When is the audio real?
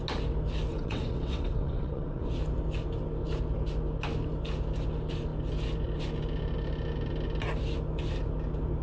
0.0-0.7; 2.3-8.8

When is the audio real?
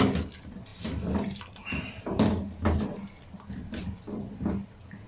0.0-5.1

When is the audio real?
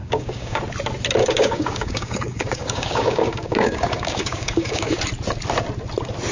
0.6-1.2; 5.0-6.3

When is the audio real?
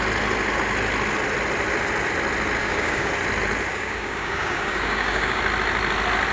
0.0-2.6; 3.1-3.7; 5.4-6.3